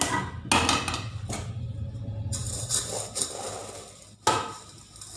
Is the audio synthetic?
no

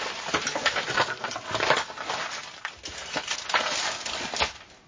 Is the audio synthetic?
no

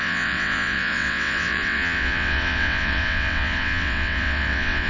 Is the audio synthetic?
yes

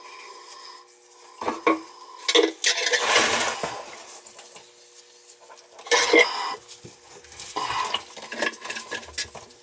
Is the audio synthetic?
no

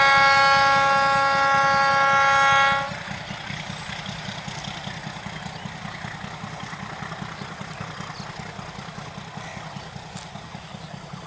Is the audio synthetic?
no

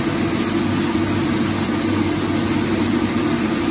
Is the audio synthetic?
no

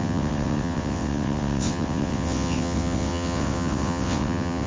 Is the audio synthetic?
yes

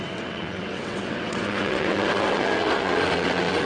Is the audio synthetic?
yes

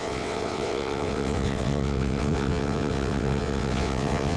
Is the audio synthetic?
yes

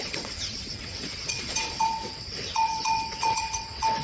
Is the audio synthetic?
yes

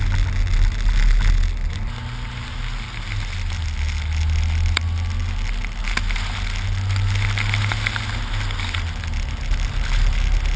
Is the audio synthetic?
no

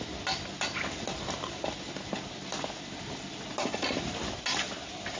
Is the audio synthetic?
no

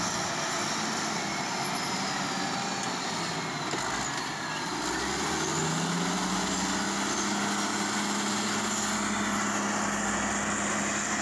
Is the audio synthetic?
no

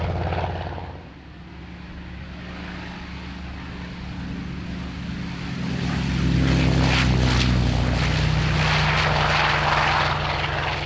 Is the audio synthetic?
no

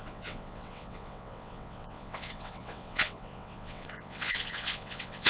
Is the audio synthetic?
yes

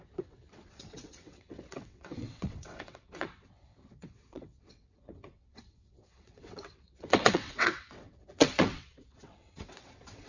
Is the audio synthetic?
yes